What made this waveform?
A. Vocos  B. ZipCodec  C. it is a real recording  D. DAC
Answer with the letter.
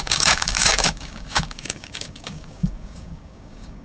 D